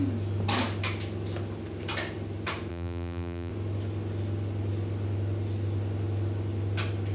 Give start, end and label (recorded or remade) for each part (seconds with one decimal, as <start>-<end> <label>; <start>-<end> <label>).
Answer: 0.0-2.7 recorded; 2.7-3.5 remade; 3.5-7.1 recorded

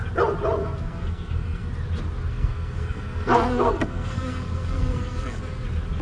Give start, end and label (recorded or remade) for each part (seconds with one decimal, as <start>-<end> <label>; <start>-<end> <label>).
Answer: 0.0-0.6 recorded; 0.6-1.7 remade; 1.7-2.3 recorded; 2.3-5.4 remade; 5.4-6.0 recorded

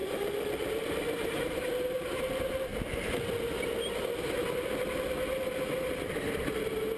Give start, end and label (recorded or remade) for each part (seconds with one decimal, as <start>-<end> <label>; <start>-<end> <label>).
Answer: 0.0-2.7 remade; 2.7-4.0 recorded; 4.0-4.4 remade; 4.4-7.0 recorded